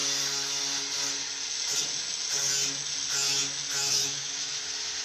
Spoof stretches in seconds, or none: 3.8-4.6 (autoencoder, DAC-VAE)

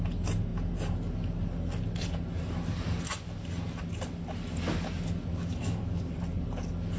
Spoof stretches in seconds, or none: 5.3-6.0 (autoencoder, DAC-VAE)

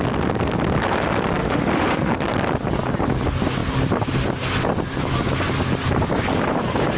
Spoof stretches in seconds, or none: 1.4-2.1 (autoencoder, DAC-VAE)